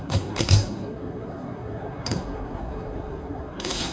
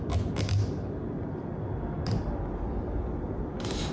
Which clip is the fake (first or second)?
first